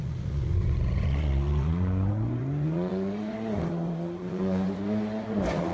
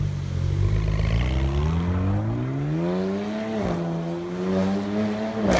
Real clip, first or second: second